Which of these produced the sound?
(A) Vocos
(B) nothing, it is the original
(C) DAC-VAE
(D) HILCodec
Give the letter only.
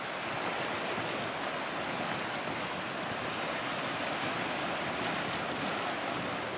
B